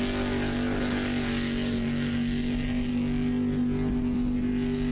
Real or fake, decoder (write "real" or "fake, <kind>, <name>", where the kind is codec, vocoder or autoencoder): real